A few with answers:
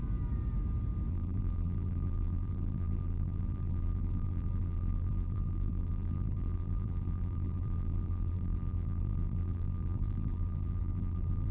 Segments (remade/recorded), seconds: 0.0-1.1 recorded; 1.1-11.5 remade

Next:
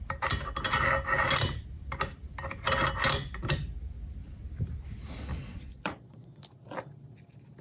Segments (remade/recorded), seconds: 0.0-5.3 recorded; 5.3-6.4 remade; 6.4-7.6 recorded

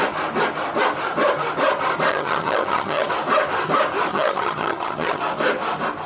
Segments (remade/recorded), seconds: 0.0-2.1 recorded; 2.1-3.1 remade; 3.1-4.1 recorded; 4.1-5.2 remade; 5.2-6.1 recorded

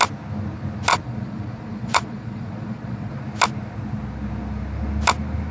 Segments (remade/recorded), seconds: 0.0-0.9 recorded; 0.9-3.1 remade; 3.1-5.5 recorded

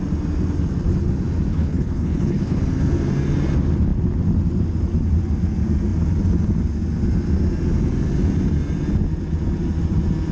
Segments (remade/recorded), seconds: 0.0-1.5 recorded; 1.5-2.6 remade; 2.6-10.3 recorded

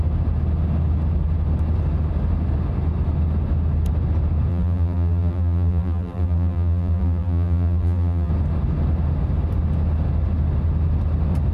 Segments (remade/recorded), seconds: 0.0-4.5 recorded; 4.5-8.3 remade; 8.3-11.5 recorded

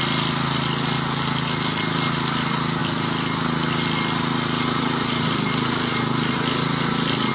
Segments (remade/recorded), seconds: 0.0-7.3 recorded